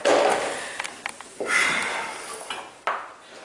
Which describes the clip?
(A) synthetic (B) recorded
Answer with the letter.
B